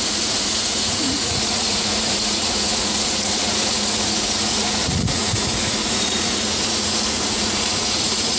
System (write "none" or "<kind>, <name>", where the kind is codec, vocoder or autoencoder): vocoder, Vocos